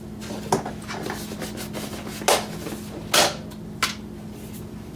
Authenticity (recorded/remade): recorded